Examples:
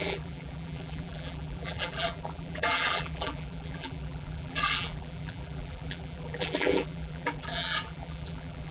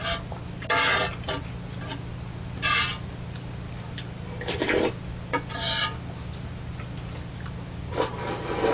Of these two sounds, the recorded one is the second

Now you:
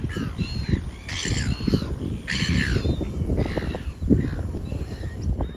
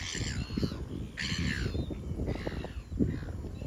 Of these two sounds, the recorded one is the second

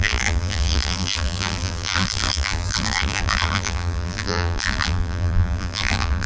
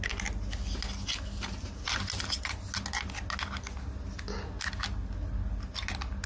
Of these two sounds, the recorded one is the second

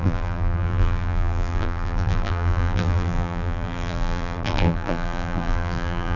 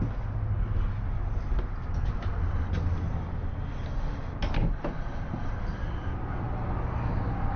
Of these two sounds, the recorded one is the second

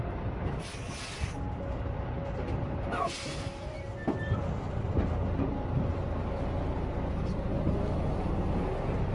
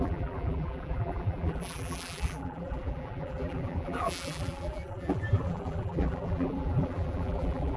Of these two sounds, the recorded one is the first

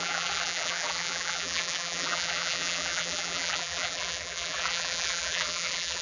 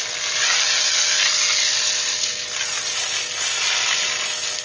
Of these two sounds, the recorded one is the second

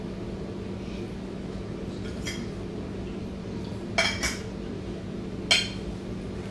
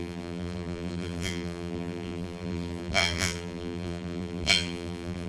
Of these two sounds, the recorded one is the first